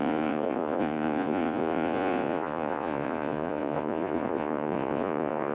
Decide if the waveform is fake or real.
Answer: fake